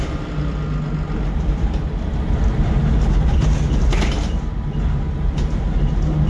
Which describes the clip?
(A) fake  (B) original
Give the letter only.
B